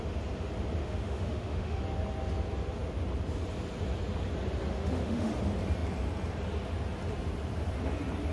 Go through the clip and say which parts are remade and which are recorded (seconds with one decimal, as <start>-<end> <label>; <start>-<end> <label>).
0.0-0.8 recorded; 0.8-1.8 remade; 1.8-4.7 recorded; 4.7-5.3 remade; 5.3-8.3 recorded